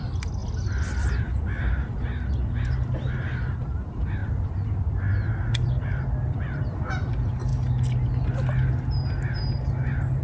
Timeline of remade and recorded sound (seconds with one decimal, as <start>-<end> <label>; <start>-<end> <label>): 0.0-0.4 recorded; 0.4-1.7 remade; 1.7-4.2 recorded; 4.2-7.1 remade; 7.1-10.2 recorded